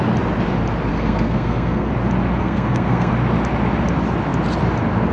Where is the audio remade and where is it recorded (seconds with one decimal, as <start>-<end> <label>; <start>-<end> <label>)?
0.0-0.9 recorded; 0.9-1.9 remade; 1.9-2.4 recorded; 2.4-3.1 remade; 3.1-5.1 recorded